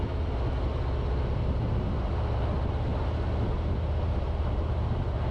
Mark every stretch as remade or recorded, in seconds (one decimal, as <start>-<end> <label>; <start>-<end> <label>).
0.0-5.3 recorded